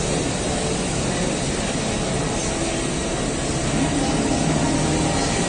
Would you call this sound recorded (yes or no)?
yes